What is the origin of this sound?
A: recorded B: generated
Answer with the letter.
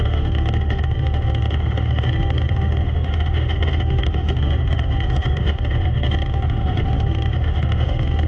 B